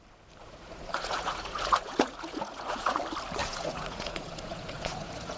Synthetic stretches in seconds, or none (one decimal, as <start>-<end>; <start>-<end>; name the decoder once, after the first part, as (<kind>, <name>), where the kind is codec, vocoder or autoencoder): 0.4-3.0 (vocoder, Vocos); 3.4-5.4